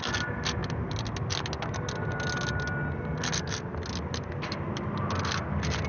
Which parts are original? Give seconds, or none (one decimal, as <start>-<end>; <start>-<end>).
0.0-5.9